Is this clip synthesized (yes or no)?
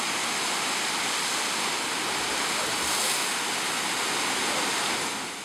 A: no